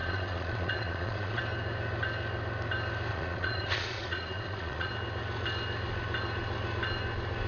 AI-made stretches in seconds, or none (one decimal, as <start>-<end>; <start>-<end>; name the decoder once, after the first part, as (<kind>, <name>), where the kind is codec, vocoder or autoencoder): 0.0-1.4 (vocoder, Vocos); 3.1-4.9